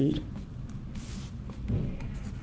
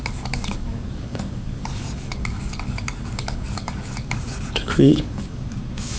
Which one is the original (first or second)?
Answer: first